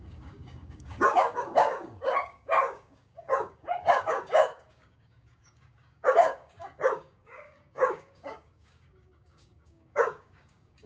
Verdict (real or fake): fake